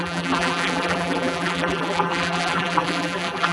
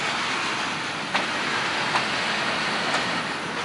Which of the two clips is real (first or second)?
second